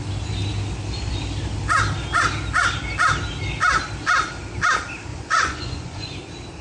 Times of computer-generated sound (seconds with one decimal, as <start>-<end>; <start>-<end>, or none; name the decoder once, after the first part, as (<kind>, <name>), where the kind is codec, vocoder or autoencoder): 5.1-6.1 (vocoder, Vocos)